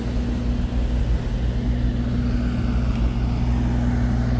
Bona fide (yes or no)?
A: yes